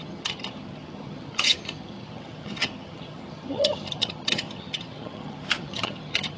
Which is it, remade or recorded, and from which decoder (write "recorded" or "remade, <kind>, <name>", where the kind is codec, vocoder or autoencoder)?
remade, vocoder, HiFi-GAN